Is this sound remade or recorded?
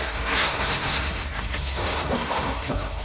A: remade